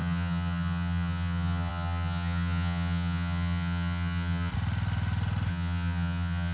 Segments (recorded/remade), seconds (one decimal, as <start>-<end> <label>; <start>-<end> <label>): 0.0-4.5 remade; 4.5-5.5 recorded; 5.5-6.5 remade